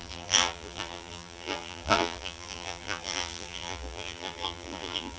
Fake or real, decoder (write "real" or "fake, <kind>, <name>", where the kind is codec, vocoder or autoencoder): fake, vocoder, BigVGAN v2